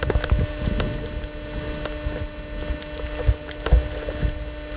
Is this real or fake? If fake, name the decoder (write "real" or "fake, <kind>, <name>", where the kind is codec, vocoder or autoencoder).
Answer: real